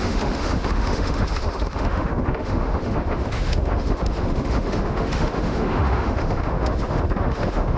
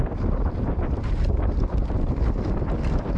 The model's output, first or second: first